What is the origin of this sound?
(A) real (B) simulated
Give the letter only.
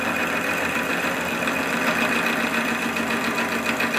A